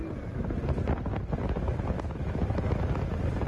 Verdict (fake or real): real